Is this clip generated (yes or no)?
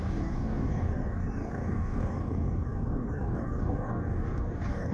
yes